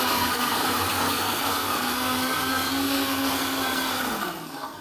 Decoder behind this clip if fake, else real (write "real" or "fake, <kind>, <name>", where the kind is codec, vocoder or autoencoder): fake, codec, SNAC